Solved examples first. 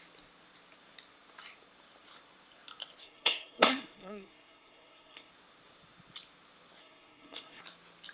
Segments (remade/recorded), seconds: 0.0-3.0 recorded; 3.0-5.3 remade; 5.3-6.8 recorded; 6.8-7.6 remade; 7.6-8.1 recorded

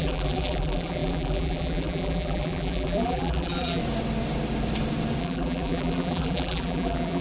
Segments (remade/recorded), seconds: 0.0-3.8 remade; 3.8-5.2 recorded; 5.2-7.2 remade